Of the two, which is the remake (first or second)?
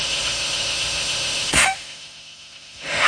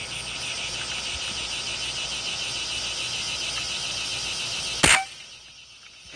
first